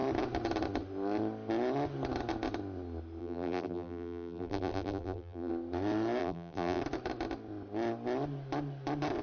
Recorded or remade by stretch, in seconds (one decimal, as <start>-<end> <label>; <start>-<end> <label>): 0.0-3.2 recorded; 3.2-5.5 remade; 5.5-6.2 recorded; 6.2-6.8 remade; 6.8-9.2 recorded